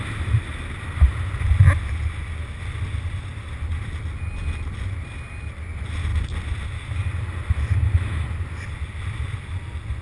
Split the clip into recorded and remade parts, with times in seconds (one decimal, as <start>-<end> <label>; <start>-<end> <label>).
0.0-10.0 recorded